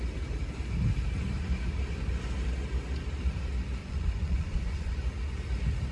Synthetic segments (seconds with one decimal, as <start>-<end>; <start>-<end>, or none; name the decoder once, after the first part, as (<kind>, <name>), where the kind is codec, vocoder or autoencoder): 3.8-5.0 (vocoder, Vocos)

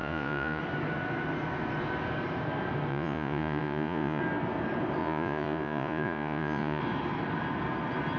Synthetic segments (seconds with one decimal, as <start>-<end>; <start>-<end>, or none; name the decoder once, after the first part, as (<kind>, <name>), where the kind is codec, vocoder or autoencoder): 0.0-0.6 (vocoder, Vocos); 2.9-4.2; 5.0-6.8

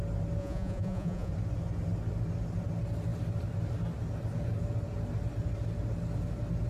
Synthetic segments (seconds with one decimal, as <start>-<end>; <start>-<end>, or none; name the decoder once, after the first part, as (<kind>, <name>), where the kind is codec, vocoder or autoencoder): 0.4-1.3 (vocoder, Vocos)

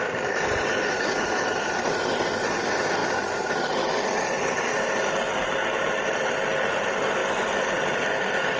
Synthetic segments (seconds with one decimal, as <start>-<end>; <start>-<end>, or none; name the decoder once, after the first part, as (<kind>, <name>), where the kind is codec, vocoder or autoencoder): none

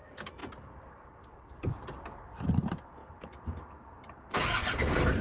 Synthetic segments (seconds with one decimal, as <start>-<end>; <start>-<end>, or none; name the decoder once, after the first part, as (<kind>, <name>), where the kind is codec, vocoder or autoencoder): none

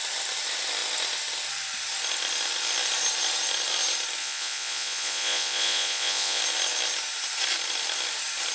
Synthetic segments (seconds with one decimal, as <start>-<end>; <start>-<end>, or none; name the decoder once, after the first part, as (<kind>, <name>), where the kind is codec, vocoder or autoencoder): 4.2-6.4 (vocoder, Vocos)

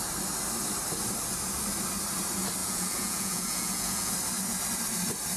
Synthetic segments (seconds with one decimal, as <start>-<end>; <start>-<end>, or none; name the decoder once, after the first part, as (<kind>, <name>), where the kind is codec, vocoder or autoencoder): 2.6-4.1 (vocoder, Vocos)